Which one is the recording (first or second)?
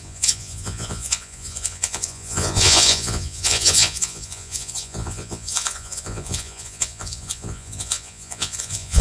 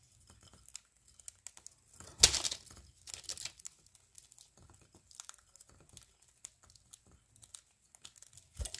second